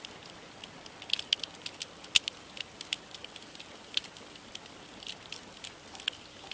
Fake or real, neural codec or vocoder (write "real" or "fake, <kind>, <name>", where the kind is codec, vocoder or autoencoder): real